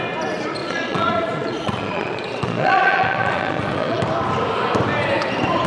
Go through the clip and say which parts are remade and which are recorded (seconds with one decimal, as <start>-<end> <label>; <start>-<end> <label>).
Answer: 0.0-0.6 recorded; 0.6-4.0 remade; 4.0-5.7 recorded